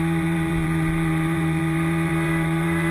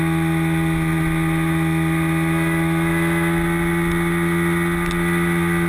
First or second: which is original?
second